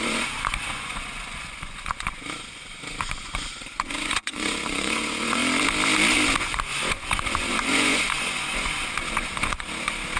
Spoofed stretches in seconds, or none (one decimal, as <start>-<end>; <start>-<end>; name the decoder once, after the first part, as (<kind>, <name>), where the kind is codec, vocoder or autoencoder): 0.0-5.4 (vocoder, Vocos); 6.4-10.2